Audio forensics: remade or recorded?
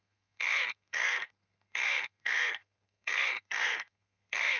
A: remade